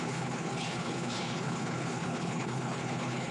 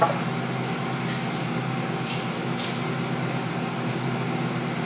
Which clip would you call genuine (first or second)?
second